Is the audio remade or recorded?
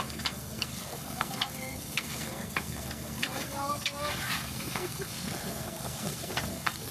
remade